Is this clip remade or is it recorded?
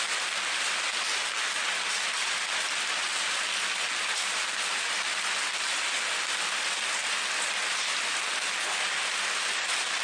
recorded